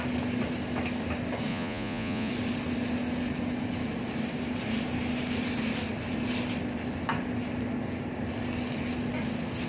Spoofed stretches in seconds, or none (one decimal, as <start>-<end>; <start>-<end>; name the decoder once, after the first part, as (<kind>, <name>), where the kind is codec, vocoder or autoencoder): 1.5-2.3 (vocoder, Vocos)